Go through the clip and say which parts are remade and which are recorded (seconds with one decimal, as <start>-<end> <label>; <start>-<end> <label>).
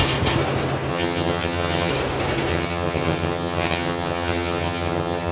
0.0-0.9 recorded; 0.9-1.9 remade; 1.9-2.5 recorded; 2.5-5.3 remade